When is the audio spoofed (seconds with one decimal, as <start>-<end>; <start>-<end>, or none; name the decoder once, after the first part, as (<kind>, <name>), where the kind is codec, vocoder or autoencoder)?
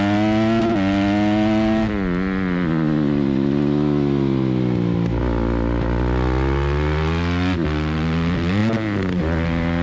none